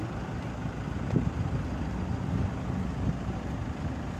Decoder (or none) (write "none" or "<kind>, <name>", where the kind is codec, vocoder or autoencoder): none